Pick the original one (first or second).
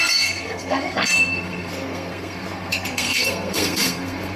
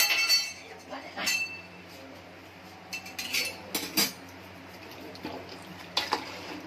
second